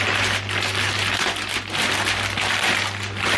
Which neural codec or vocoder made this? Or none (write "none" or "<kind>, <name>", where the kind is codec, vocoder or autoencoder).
vocoder, BigVGAN v2